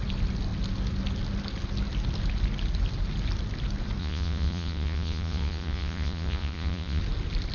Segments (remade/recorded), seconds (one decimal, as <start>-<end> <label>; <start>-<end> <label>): 0.0-4.0 recorded; 4.0-7.0 remade; 7.0-7.5 recorded